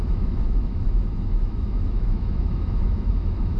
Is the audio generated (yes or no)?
yes